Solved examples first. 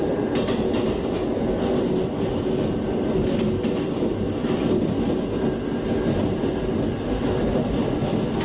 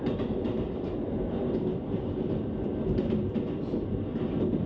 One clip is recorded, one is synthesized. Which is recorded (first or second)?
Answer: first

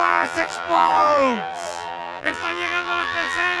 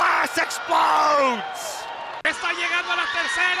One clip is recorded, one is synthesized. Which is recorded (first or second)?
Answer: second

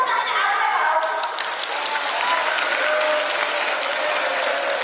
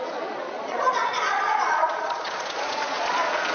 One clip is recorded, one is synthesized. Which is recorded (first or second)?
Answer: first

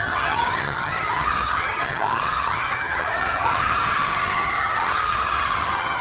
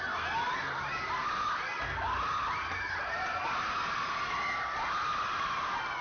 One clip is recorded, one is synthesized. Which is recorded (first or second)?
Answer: second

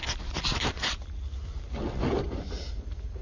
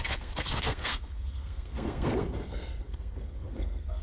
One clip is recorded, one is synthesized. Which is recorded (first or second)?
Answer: first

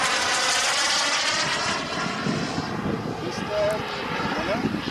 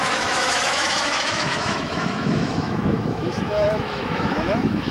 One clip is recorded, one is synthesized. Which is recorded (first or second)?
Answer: first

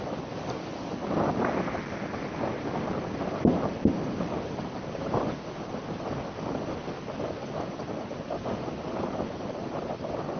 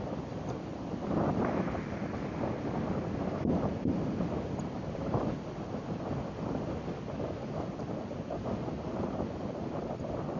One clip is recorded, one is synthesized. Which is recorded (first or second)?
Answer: first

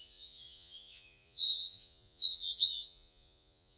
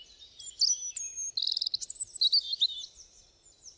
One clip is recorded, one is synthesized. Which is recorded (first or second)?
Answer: second